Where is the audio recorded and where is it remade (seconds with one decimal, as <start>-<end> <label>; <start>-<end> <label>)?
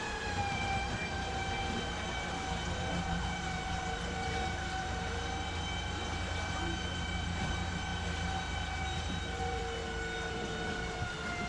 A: 0.0-1.6 remade; 1.6-2.9 recorded; 2.9-7.9 remade; 7.9-8.5 recorded; 8.5-9.6 remade; 9.6-10.3 recorded; 10.3-11.5 remade